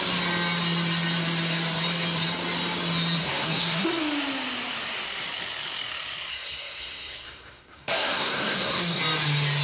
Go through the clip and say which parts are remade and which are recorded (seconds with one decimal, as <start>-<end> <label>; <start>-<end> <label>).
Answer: 0.0-3.2 recorded; 3.2-4.0 remade; 4.0-6.3 recorded; 6.3-9.0 remade; 9.0-9.6 recorded